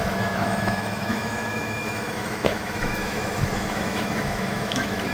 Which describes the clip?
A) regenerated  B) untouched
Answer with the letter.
A